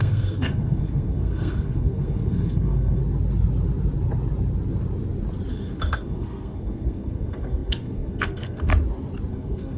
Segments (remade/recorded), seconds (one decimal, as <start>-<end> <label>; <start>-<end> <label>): 0.0-3.0 remade; 3.0-5.5 recorded; 5.5-8.7 remade; 8.7-9.3 recorded; 9.3-9.8 remade